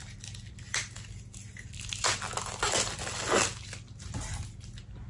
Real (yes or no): yes